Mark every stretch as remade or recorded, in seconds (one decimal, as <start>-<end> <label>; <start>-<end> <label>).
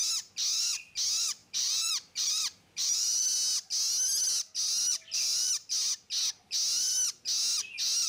0.0-1.4 recorded; 1.4-3.2 remade; 3.2-4.9 recorded; 4.9-5.5 remade; 5.5-8.1 recorded